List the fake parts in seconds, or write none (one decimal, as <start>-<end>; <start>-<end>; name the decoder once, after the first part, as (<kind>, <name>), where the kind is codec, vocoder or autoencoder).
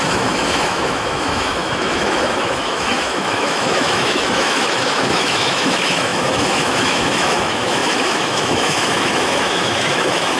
0.0-10.4 (autoencoder, DAC-VAE)